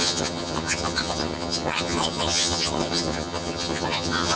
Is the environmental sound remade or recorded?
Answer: remade